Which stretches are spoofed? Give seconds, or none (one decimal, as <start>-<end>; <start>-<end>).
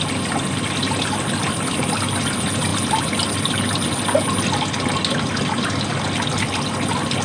none